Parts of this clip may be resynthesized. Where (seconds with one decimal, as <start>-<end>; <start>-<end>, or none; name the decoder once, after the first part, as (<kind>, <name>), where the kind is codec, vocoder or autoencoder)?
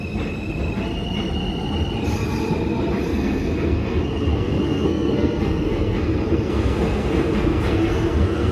3.1-8.5 (codec, SNAC)